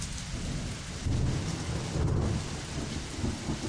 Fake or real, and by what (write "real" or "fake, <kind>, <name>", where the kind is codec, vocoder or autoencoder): real